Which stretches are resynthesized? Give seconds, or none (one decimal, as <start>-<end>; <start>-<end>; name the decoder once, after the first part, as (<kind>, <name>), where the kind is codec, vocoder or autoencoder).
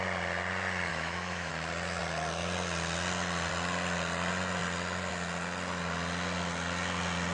0.9-1.5 (autoencoder, DAC-VAE)